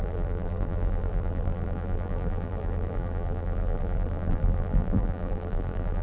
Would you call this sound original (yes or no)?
no